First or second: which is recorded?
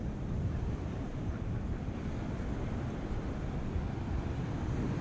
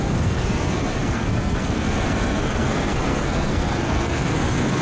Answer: first